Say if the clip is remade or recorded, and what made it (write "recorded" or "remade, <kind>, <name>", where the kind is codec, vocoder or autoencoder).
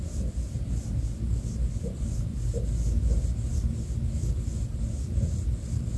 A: recorded